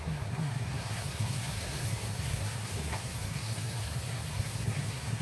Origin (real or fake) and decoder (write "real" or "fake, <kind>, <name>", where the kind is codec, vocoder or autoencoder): fake, codec, SNAC